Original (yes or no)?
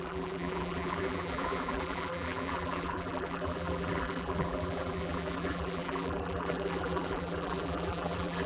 no